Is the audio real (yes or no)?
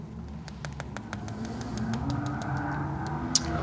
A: yes